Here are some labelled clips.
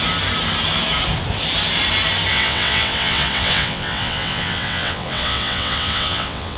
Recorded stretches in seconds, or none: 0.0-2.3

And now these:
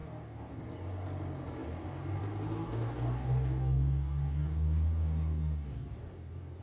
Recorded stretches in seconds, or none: 0.6-2.6

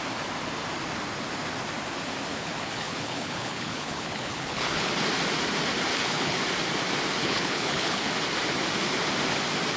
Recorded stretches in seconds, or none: 0.0-2.3; 4.9-5.9; 6.4-7.2; 8.1-9.8

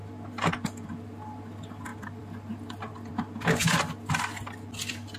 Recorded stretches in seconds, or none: none

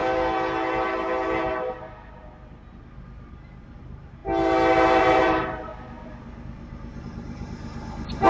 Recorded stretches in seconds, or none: 0.0-3.8; 4.2-5.0; 5.7-7.0